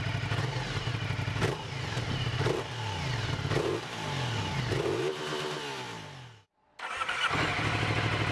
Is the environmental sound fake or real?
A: real